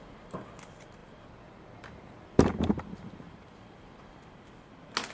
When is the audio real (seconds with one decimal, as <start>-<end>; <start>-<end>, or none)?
0.0-1.0; 4.1-5.1